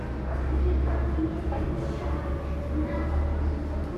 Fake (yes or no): no